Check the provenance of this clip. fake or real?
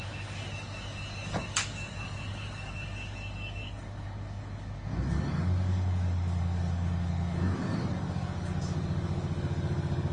fake